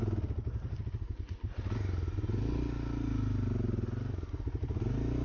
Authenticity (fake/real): real